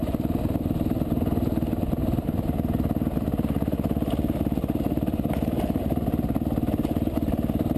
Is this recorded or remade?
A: recorded